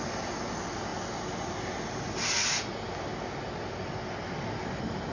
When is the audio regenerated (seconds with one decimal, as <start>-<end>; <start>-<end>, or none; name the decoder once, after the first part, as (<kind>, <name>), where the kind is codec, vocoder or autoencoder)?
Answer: none